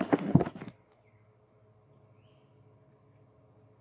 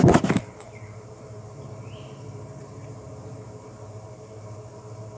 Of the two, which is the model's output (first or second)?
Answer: second